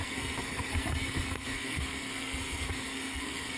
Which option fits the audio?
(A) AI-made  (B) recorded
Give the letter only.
A